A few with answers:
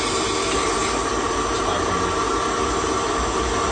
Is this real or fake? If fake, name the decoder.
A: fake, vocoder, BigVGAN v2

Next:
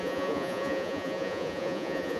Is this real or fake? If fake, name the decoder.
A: fake, vocoder, Vocos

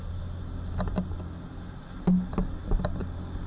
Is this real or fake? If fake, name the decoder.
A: real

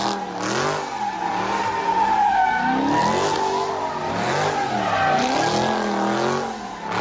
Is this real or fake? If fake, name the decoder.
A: real